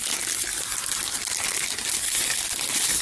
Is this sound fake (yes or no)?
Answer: no